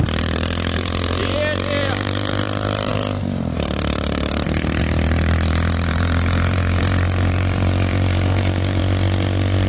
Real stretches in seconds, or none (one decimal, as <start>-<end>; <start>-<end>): 1.2-1.9; 8.8-9.7